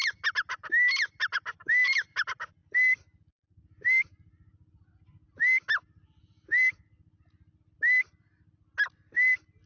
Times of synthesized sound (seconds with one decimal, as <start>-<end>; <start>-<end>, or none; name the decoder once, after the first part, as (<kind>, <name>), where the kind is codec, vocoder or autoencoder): none